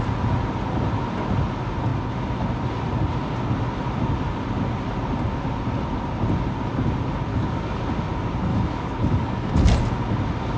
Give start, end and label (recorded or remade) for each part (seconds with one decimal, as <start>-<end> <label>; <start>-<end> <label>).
0.0-7.3 recorded; 7.3-7.8 remade; 7.8-8.5 recorded; 8.5-9.5 remade; 9.5-10.6 recorded